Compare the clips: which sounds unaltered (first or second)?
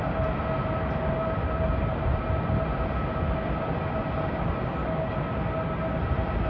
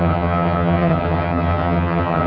first